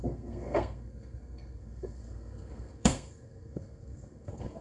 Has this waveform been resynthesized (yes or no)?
yes